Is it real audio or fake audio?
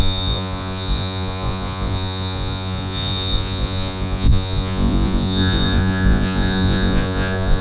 fake